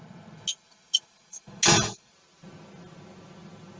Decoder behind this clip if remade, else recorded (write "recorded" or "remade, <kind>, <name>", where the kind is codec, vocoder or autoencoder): recorded